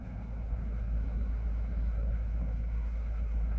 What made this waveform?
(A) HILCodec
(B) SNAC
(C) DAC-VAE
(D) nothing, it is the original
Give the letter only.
B